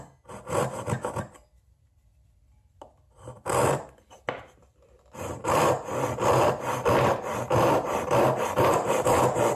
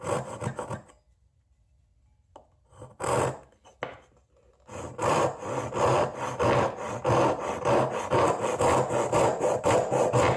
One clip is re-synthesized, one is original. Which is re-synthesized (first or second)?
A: first